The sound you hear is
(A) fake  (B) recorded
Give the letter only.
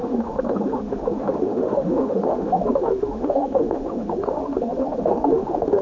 A